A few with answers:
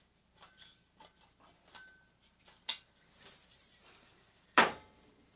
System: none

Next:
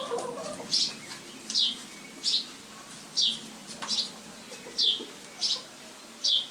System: none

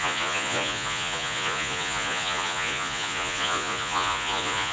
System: vocoder, Vocos